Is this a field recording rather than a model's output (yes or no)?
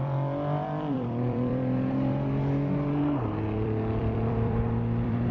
no